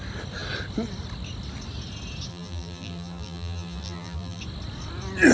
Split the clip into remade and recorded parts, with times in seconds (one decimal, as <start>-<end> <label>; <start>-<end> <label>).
0.0-2.3 recorded; 2.3-4.4 remade; 4.4-5.3 recorded